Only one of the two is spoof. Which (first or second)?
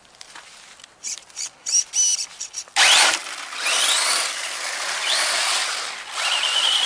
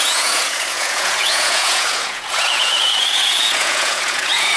second